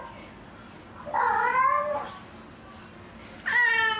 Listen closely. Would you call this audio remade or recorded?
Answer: recorded